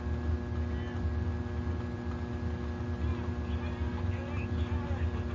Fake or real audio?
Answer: real